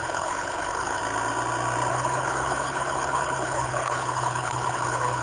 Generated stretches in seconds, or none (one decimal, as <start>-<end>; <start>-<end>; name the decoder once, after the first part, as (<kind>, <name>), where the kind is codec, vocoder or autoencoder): 0.0-1.0 (codec, HILCodec); 1.9-5.2